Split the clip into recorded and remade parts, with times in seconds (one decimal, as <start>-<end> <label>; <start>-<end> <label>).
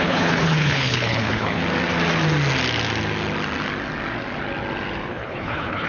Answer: 0.0-1.6 remade; 1.6-5.1 recorded; 5.1-5.9 remade